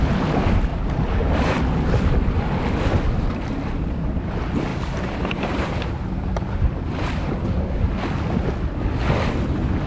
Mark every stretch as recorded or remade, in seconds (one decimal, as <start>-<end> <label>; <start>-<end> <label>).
0.0-0.7 recorded; 0.7-1.6 remade; 1.6-4.7 recorded; 4.7-7.3 remade; 7.3-9.9 recorded